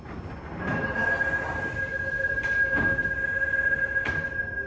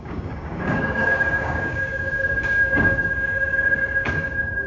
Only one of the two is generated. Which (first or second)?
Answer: second